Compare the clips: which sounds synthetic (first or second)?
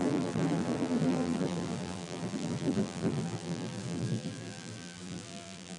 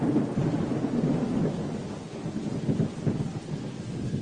first